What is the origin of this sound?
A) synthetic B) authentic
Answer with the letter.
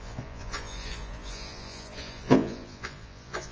A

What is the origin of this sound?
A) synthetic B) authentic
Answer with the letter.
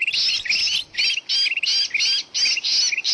B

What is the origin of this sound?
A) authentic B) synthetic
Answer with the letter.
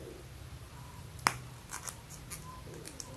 A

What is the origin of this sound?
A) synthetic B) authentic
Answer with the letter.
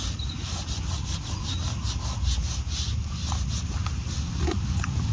B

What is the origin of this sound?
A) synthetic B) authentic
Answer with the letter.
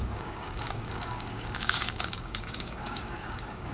A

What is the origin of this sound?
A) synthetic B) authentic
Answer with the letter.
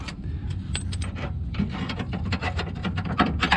B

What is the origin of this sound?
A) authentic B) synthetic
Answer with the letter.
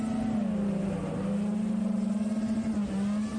A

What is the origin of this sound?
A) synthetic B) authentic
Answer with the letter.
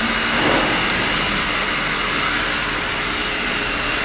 B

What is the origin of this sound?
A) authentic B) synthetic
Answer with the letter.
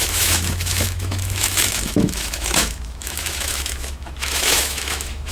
B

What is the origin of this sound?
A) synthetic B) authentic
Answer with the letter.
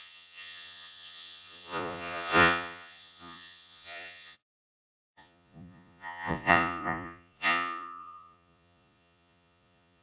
A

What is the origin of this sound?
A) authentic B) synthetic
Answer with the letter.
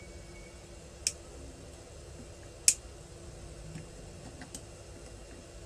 A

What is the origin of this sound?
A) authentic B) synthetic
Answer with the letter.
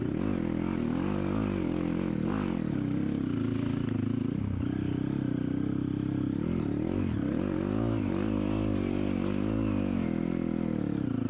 A